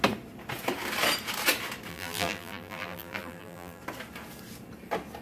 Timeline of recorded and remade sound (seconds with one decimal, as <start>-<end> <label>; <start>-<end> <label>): 0.0-1.9 recorded; 1.9-3.8 remade; 3.8-5.2 recorded